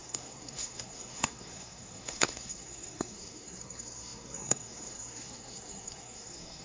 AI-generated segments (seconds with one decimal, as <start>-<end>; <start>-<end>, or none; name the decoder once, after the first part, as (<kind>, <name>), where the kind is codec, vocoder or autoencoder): 0.0-6.6 (codec, SNAC)